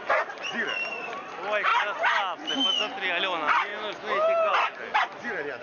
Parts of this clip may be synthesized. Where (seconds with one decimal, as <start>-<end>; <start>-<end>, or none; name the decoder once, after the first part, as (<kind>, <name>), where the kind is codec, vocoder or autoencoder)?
none